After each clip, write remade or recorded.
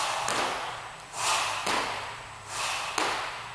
recorded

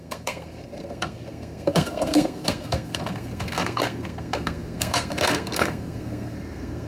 remade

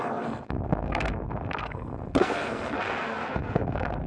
remade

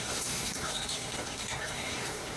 remade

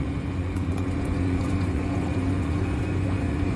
remade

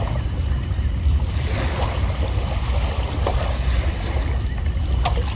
recorded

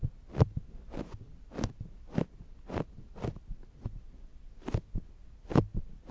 recorded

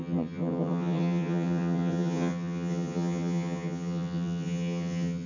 remade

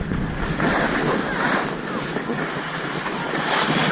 recorded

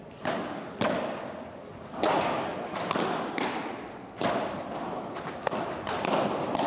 recorded